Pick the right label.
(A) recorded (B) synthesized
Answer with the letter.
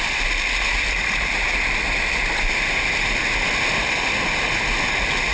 A